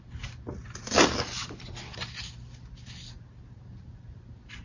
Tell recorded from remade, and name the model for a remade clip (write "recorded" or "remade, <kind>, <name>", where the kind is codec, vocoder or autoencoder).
recorded